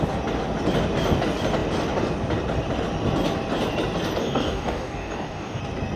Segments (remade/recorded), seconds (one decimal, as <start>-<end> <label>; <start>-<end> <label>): 0.0-4.2 recorded; 4.2-5.6 remade; 5.6-6.0 recorded